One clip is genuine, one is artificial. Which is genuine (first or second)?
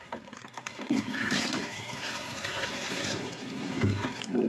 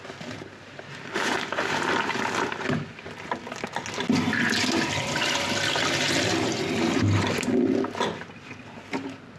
second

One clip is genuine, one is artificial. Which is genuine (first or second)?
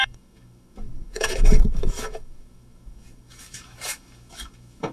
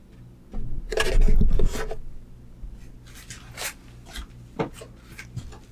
second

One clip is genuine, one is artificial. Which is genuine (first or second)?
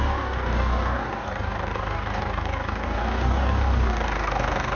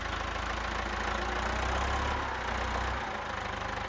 second